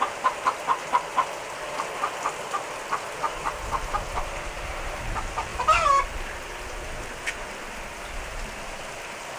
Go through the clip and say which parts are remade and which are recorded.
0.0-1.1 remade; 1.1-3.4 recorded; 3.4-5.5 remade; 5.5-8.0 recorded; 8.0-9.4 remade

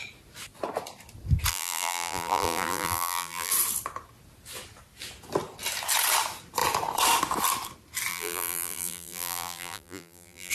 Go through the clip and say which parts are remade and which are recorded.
0.0-1.5 recorded; 1.5-3.5 remade; 3.5-8.1 recorded; 8.1-10.5 remade

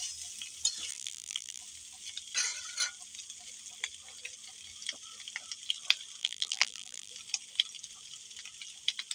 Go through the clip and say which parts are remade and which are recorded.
0.0-0.9 recorded; 0.9-1.6 remade; 1.6-6.2 recorded; 6.2-7.1 remade; 7.1-9.1 recorded